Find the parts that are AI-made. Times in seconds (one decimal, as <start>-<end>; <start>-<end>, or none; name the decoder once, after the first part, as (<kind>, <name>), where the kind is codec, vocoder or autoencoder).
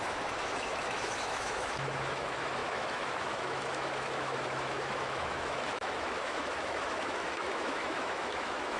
0.0-8.8 (autoencoder, DAC-VAE)